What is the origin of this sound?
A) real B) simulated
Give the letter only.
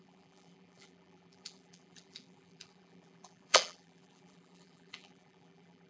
B